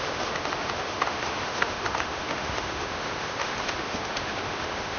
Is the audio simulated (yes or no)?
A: yes